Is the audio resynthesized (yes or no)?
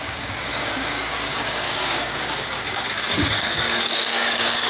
yes